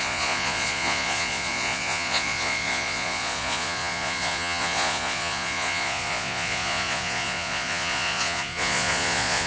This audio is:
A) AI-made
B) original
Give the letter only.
A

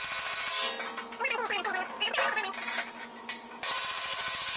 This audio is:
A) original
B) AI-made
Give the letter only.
A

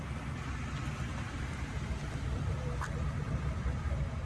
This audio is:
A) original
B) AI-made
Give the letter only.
A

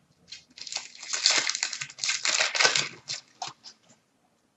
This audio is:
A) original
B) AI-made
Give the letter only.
A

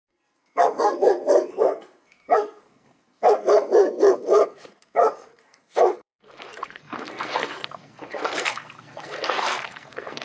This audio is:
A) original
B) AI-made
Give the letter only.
B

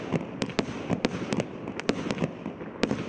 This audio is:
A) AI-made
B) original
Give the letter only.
B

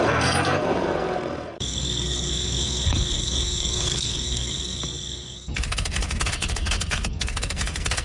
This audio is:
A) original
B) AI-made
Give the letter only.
B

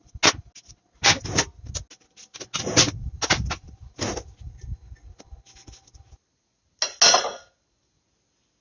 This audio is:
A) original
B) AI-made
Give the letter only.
A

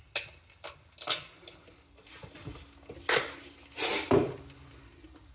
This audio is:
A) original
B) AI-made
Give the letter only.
A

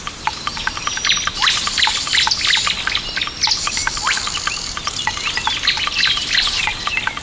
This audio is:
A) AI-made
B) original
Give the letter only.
A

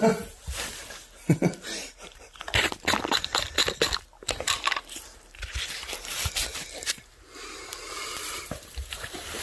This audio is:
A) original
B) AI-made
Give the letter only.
B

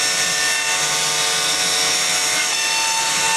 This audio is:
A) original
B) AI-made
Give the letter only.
A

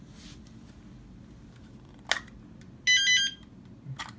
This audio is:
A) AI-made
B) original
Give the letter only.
B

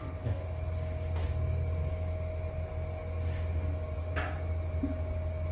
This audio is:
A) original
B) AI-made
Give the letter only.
A